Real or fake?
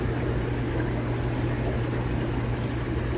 real